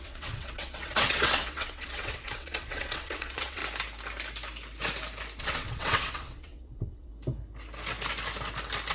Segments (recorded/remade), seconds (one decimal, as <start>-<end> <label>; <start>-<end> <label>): 0.0-3.6 remade; 3.6-5.4 recorded; 5.4-7.1 remade; 7.1-8.9 recorded